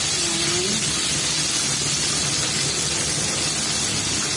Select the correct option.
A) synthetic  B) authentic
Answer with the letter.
B